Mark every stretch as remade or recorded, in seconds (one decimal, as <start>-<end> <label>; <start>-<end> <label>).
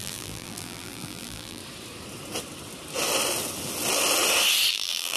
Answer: 0.0-1.6 remade; 1.6-4.7 recorded; 4.7-5.2 remade